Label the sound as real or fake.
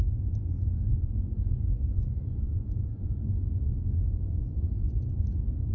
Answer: fake